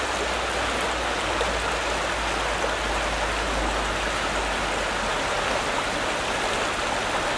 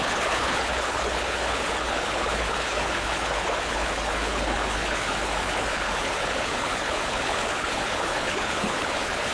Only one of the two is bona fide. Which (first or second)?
first